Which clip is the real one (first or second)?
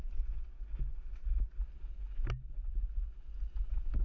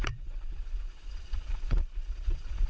first